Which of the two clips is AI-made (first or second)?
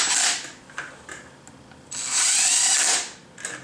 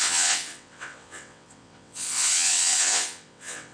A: second